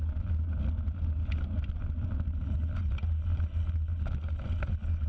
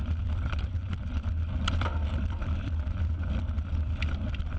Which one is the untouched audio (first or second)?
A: first